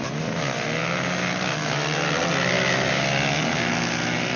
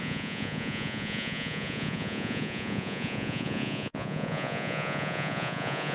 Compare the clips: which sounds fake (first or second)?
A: second